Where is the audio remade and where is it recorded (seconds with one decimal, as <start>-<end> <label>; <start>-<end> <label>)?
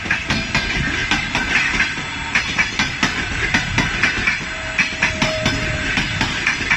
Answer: 0.0-6.8 recorded